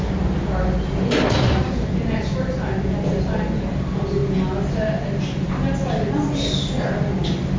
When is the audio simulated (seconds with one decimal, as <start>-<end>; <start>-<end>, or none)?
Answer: none